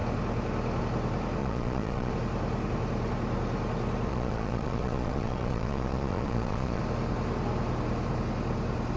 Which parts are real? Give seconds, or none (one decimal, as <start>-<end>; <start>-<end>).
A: 0.0-1.4; 2.1-4.1; 6.8-9.0